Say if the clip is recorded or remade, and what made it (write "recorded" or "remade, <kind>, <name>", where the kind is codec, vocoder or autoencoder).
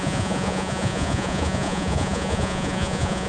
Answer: remade, vocoder, Vocos